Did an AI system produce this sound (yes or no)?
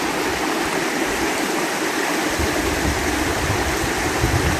no